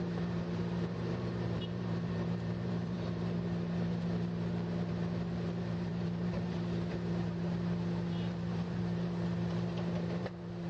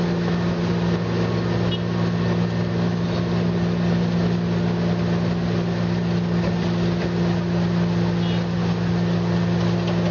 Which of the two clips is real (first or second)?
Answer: second